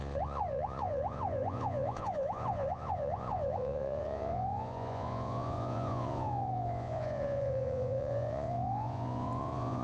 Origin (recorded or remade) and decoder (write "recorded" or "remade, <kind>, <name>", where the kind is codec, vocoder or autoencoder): remade, vocoder, Vocos